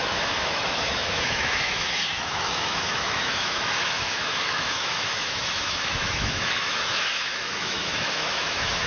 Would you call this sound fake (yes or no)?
yes